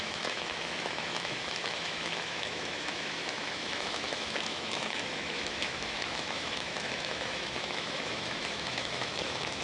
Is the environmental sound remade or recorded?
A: remade